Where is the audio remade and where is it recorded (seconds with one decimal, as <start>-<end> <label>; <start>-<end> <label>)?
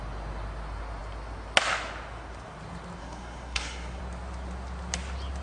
0.0-3.0 recorded; 3.0-4.0 remade; 4.0-5.4 recorded